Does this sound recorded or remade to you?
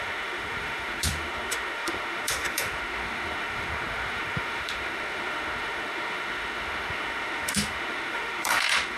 remade